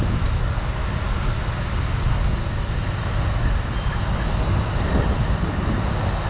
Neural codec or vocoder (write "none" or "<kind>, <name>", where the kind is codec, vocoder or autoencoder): none